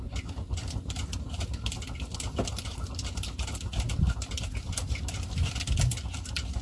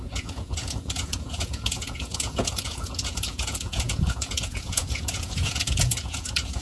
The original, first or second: first